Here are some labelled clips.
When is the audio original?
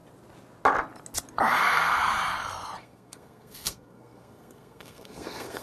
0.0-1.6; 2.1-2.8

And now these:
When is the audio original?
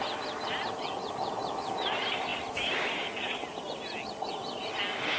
0.0-5.2